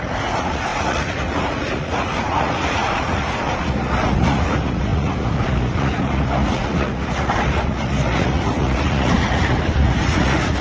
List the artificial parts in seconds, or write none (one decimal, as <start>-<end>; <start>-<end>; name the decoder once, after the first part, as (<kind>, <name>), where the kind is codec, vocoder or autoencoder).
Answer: 0.0-10.6 (vocoder, Vocos)